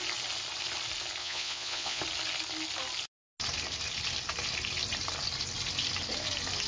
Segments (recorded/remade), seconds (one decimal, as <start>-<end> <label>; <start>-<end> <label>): 0.0-1.2 recorded; 1.2-2.0 remade; 2.0-6.7 recorded